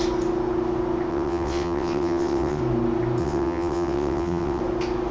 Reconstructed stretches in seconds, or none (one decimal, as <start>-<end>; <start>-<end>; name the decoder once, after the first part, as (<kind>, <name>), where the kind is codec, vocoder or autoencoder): 1.1-2.6 (vocoder, WaveNeXt); 3.2-4.6